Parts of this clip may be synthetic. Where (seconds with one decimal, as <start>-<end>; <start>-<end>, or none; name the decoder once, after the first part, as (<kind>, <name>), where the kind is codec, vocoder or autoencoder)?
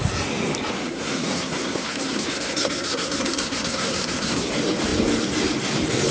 0.8-4.5 (codec, SNAC)